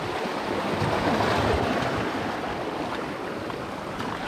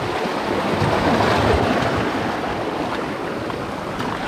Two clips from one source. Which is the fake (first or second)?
first